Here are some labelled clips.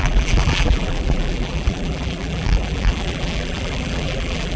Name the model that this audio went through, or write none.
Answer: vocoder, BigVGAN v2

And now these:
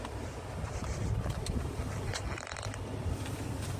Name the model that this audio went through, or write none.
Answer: vocoder, BigVGAN v2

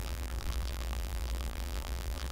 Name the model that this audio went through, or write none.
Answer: vocoder, BigVGAN v2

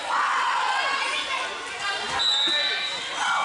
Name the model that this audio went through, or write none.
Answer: none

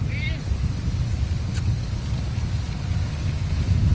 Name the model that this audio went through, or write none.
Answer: none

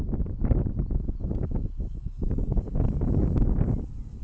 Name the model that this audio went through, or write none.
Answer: none